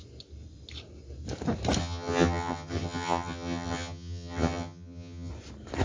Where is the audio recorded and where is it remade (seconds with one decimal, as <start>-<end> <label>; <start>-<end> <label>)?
0.0-1.8 recorded; 1.8-5.3 remade; 5.3-5.8 recorded